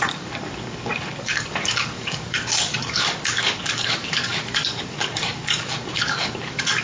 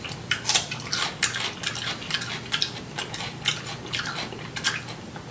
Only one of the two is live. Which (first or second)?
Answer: second